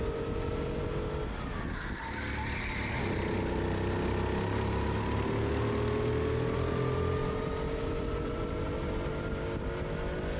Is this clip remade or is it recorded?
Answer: recorded